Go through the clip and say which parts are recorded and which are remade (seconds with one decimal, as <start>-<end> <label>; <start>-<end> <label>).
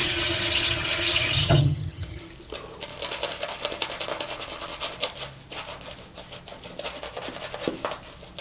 0.0-2.2 remade; 2.2-8.4 recorded